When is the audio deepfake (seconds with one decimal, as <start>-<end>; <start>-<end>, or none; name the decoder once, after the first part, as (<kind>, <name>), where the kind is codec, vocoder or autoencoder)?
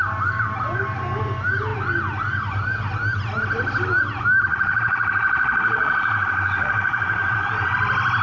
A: 4.5-7.7 (vocoder, Vocos)